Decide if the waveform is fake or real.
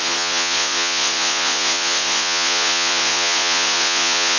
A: fake